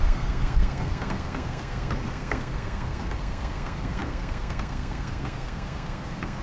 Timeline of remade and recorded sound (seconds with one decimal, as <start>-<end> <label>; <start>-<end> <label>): 0.0-6.4 remade